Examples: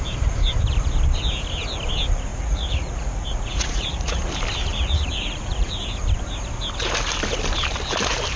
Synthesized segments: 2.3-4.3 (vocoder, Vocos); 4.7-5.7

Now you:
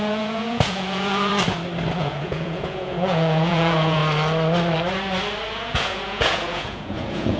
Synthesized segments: 0.0-1.3 (vocoder, Vocos); 1.9-4.0; 5.5-7.4

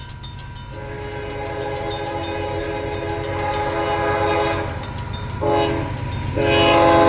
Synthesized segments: none

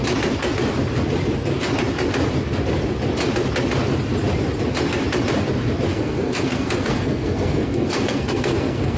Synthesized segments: 5.9-9.0 (codec, SNAC)

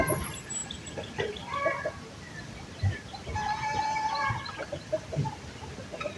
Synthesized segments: none

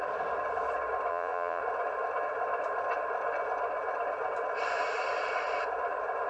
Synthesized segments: 1.1-1.6 (vocoder, Vocos)